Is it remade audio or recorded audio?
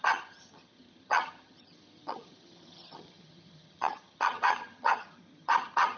remade